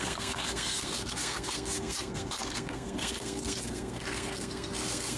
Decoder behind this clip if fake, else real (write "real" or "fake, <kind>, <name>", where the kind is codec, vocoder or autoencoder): fake, codec, SNAC